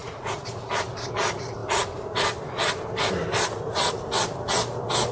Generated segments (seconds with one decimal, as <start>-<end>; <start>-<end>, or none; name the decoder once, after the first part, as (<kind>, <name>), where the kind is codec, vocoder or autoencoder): 0.0-0.7 (vocoder, Vocos)